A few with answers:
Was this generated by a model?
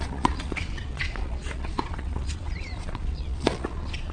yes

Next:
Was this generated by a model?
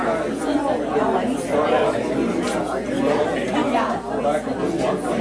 no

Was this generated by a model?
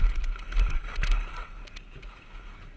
no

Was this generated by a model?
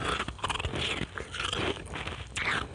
no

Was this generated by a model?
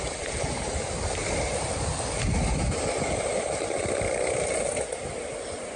no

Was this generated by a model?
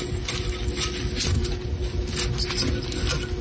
no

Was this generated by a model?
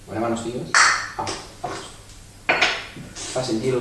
no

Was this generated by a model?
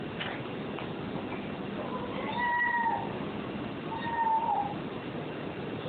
no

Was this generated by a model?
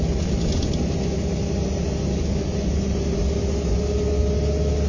no